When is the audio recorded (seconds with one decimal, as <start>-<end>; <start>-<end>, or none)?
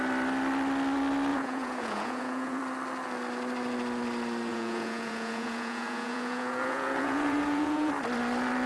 0.0-1.3; 2.6-4.5; 7.9-8.7